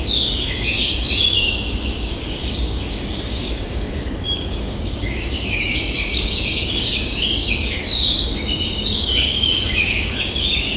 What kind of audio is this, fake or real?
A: fake